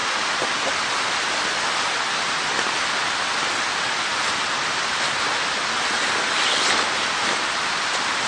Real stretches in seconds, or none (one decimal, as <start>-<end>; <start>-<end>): 0.9-8.3